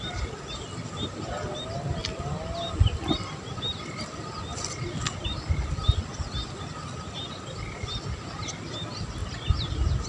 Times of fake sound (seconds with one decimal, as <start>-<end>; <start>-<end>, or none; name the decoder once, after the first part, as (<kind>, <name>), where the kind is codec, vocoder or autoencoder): none